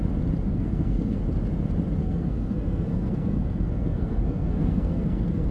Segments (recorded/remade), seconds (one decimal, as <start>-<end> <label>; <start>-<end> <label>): 0.0-0.5 recorded; 0.5-1.2 remade; 1.2-2.0 recorded; 2.0-5.5 remade